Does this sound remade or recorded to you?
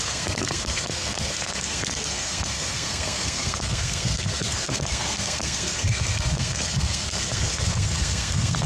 remade